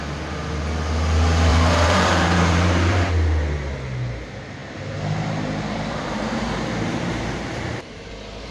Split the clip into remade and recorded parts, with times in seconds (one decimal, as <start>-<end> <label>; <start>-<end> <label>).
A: 0.0-1.5 recorded; 1.5-3.1 remade; 3.1-4.6 recorded; 4.6-8.1 remade; 8.1-8.5 recorded